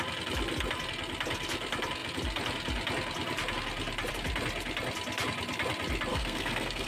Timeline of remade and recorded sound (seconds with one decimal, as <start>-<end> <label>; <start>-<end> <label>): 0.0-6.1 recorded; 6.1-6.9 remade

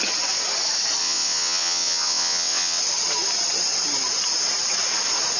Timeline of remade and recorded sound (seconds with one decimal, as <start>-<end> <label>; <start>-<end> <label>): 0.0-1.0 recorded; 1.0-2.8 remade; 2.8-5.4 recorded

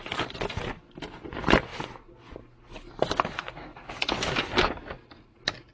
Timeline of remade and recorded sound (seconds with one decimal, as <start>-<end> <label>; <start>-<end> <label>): 0.0-5.7 recorded

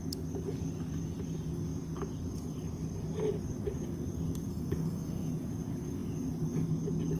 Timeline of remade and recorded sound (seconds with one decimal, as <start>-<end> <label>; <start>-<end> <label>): 0.0-4.5 recorded; 4.5-5.3 remade; 5.3-7.2 recorded

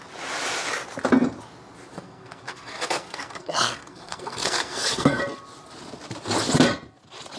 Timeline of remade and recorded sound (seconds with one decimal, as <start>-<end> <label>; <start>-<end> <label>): 0.0-1.9 recorded; 1.9-5.2 remade; 5.2-7.4 recorded

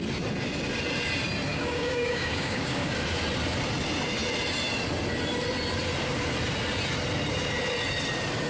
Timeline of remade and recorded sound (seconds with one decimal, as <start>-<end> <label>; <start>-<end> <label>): 0.0-1.5 recorded; 1.5-2.9 remade; 2.9-8.5 recorded

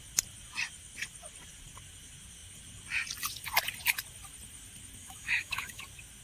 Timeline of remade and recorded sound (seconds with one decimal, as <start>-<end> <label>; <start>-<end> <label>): 0.0-5.0 recorded; 5.0-5.8 remade; 5.8-6.2 recorded

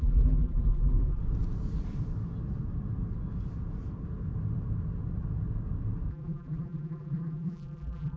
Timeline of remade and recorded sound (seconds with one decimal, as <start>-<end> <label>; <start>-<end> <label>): 0.0-1.2 remade; 1.2-6.1 recorded; 6.1-8.2 remade